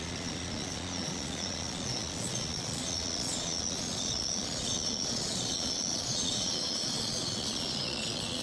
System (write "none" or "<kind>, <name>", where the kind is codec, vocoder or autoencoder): vocoder, Vocos